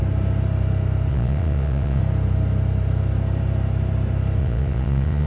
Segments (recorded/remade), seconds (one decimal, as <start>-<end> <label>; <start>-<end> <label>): 0.0-1.1 recorded; 1.1-2.0 remade; 2.0-4.4 recorded; 4.4-5.3 remade